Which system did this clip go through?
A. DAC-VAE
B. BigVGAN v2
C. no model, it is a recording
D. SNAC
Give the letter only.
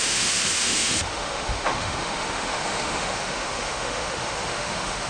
A